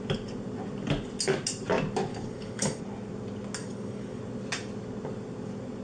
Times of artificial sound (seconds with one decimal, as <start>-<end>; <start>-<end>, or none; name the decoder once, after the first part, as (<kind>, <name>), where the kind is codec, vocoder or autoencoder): 2.1-2.8 (codec, DAC); 3.6-4.2